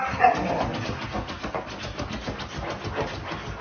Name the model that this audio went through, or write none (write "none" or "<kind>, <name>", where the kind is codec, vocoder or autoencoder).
none